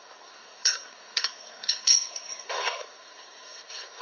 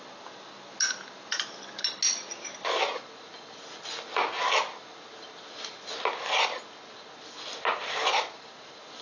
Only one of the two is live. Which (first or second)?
second